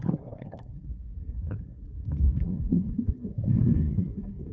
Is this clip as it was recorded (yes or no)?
no